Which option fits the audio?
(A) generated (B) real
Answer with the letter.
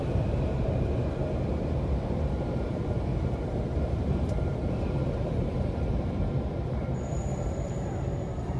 A